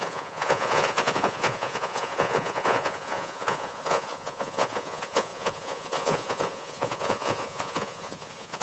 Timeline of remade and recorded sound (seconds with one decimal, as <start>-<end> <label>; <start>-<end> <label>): 0.0-8.6 remade